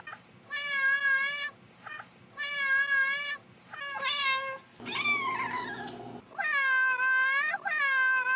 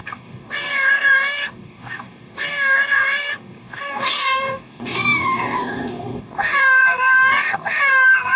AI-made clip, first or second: second